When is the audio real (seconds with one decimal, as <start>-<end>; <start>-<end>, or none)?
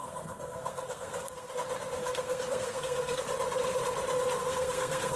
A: 1.5-2.0; 3.2-4.4